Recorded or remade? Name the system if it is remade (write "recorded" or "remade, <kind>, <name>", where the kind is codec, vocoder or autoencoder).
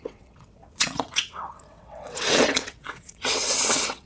remade, vocoder, WaveNeXt